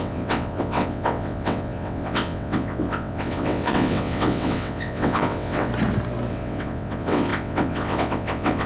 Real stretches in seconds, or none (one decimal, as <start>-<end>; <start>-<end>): 5.7-6.3